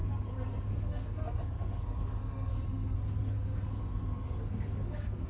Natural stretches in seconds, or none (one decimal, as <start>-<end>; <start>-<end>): none